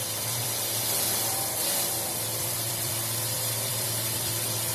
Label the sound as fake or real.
fake